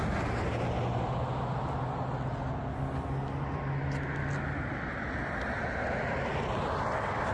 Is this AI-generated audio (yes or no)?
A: no